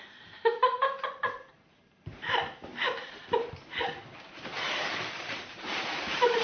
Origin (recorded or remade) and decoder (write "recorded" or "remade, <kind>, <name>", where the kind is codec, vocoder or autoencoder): remade, vocoder, BigVGAN v2